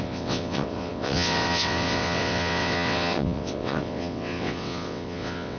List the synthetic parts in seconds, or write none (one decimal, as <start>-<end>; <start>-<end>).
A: 0.0-5.6